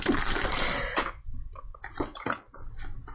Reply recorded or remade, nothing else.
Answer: recorded